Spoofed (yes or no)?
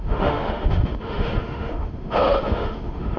yes